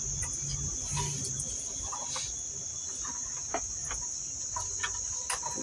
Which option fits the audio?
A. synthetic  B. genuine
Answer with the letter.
B